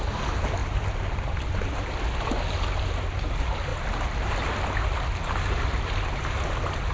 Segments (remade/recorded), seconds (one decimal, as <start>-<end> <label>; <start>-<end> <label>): 0.0-0.6 recorded; 0.6-1.9 remade; 1.9-6.9 recorded